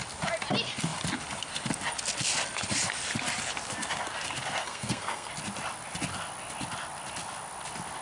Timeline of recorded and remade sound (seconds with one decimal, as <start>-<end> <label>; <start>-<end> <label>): 0.0-4.6 recorded; 4.6-5.3 remade; 5.3-8.0 recorded

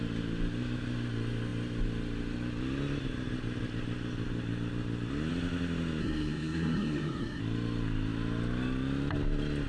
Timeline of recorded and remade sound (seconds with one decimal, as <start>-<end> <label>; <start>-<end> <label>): 0.0-6.0 recorded; 6.0-7.4 remade; 7.4-9.7 recorded

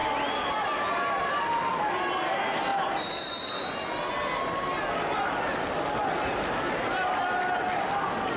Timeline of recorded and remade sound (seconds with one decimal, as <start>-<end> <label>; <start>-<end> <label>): 0.0-8.4 recorded